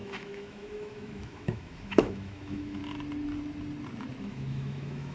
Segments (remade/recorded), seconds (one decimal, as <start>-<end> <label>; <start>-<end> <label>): 0.0-2.8 remade; 2.8-4.2 recorded; 4.2-5.1 remade